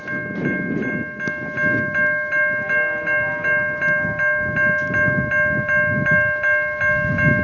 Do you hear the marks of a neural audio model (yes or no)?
no